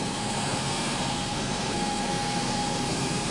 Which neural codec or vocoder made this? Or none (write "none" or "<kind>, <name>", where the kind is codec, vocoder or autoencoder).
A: codec, SNAC